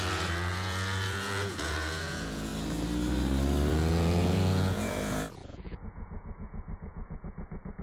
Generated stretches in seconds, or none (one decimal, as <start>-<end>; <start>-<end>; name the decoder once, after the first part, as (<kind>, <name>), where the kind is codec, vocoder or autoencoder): 0.0-2.5 (vocoder, Vocos); 3.7-7.8